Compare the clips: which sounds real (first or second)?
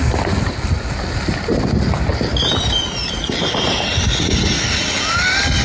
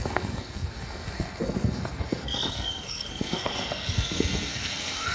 first